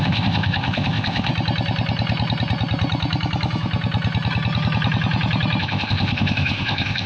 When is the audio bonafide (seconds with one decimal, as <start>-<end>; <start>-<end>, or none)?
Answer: 1.3-5.6